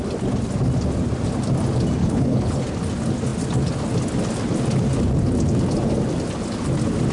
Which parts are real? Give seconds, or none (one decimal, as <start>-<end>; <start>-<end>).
0.0-2.0; 2.6-7.1